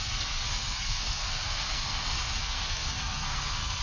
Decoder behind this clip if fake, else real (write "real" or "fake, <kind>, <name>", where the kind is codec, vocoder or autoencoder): fake, codec, SNAC